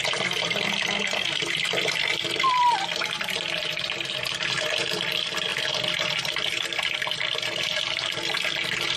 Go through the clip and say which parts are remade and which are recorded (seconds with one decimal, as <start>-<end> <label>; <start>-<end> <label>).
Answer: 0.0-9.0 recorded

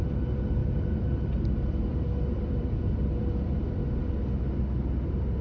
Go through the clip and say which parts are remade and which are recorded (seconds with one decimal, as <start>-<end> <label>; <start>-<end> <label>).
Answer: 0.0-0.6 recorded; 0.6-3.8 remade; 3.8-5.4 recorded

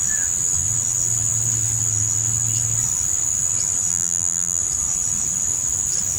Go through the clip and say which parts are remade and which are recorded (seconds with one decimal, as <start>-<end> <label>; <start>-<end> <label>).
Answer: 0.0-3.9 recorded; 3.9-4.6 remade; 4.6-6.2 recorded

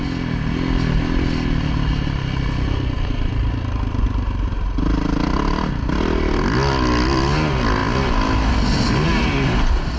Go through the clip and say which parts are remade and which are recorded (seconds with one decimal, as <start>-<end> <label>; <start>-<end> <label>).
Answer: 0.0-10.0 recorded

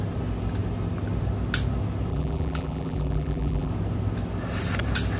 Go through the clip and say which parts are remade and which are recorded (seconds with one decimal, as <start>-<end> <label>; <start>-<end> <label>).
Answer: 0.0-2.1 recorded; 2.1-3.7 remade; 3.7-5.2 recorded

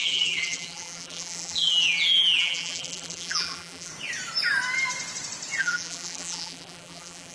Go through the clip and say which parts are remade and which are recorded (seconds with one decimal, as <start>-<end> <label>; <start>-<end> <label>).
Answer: 0.0-3.9 remade; 3.9-5.6 recorded; 5.6-7.3 remade

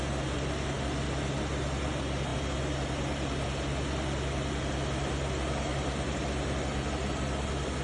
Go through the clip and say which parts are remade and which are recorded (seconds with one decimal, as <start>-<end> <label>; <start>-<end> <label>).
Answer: 0.0-7.8 recorded